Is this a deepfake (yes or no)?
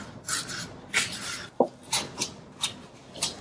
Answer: no